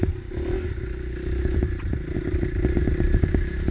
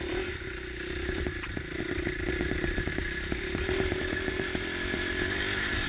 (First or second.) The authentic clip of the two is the first